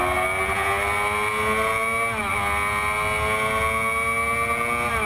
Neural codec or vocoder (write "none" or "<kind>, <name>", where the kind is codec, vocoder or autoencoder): none